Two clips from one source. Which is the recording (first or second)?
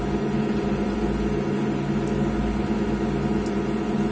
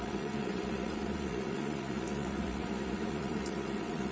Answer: first